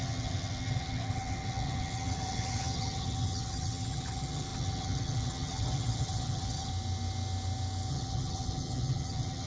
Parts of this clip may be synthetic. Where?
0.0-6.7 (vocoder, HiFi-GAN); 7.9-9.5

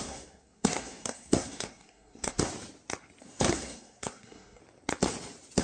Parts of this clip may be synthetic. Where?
0.0-2.5 (codec, SNAC); 3.2-4.6

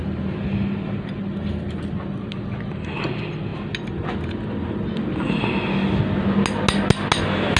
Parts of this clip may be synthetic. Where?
none

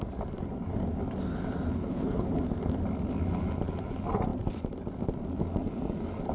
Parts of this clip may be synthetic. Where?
1.7-2.3 (codec, HILCodec)

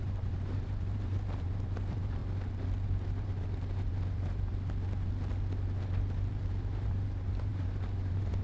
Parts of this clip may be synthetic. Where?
0.0-2.2 (vocoder, BigVGAN v2); 3.1-4.5; 6.3-8.4